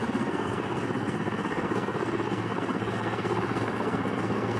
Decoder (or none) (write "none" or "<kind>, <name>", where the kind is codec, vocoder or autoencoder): codec, SNAC